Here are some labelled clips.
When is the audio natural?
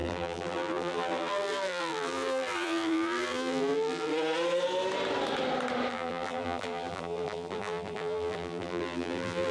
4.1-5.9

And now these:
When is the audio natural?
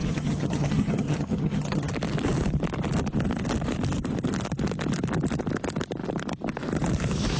1.9-7.4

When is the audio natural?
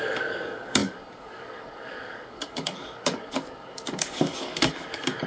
none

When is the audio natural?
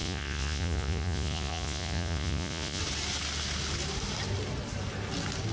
2.8-5.5